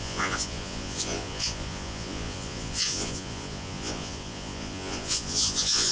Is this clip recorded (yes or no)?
no